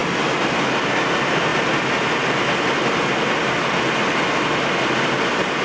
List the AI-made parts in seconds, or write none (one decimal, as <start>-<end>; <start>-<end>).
none